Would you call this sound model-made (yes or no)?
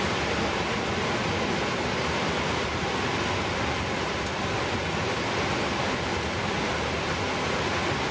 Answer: no